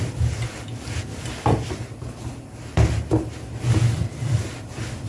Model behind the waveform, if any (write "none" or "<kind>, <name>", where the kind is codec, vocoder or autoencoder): none